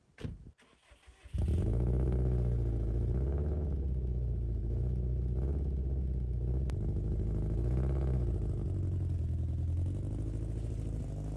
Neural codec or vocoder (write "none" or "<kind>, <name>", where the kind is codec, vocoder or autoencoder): none